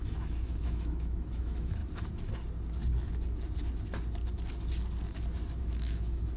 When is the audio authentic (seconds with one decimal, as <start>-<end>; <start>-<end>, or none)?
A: 1.8-5.6